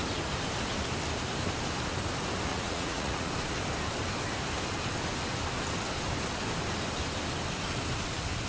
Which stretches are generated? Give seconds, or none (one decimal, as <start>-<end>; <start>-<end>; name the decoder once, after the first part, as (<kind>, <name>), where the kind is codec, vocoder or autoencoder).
2.5-3.3 (vocoder, Vocos)